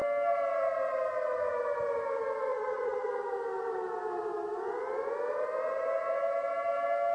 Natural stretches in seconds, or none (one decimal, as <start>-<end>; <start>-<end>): 0.0-2.5; 3.1-7.1